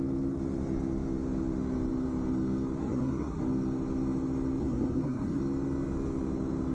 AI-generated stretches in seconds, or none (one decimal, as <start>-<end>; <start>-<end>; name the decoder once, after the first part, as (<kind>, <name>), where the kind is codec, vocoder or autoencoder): 2.8-3.4 (codec, SNAC); 4.6-5.4